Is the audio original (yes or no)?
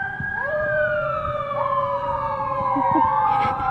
no